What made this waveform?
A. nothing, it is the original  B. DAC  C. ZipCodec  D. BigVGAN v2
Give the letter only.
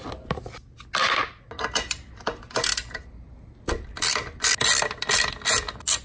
A